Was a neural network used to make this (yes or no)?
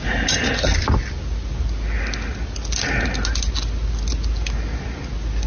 no